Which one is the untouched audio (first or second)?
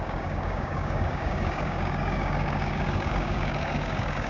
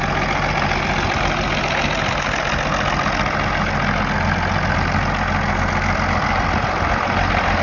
second